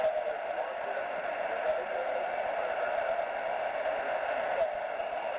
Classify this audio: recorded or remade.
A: recorded